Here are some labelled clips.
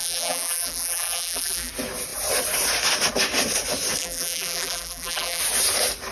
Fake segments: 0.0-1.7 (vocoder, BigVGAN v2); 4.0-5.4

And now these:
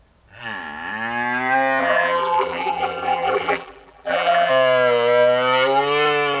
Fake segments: 1.8-4.5 (vocoder, BigVGAN v2)

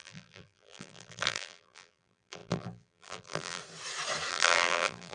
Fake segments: 0.0-3.6 (vocoder, BigVGAN v2); 4.3-5.1

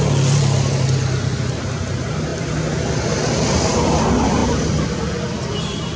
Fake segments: 4.4-5.1 (vocoder, BigVGAN v2)

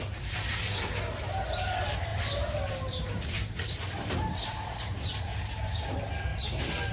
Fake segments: 0.5-1.7 (vocoder, BigVGAN v2); 2.1-5.2

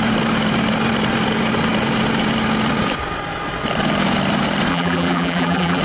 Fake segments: 4.7-5.8 (vocoder, BigVGAN v2)